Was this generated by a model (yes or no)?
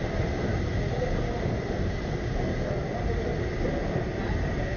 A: no